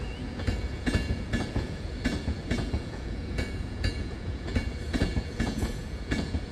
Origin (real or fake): fake